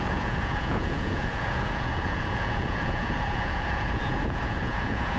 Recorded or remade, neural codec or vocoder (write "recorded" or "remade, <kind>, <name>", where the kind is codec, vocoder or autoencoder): remade, vocoder, Vocos